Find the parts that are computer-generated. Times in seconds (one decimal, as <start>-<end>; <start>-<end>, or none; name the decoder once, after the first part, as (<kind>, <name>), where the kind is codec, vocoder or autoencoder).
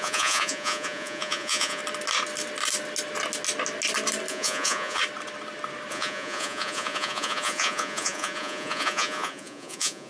0.0-1.8 (vocoder, Vocos); 4.3-5.0; 5.9-10.1